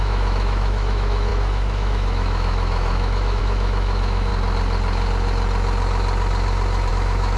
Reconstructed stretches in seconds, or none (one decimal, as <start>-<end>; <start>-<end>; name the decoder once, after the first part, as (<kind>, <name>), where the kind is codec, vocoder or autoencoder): 0.0-4.3 (autoencoder, DAC-VAE); 6.9-7.4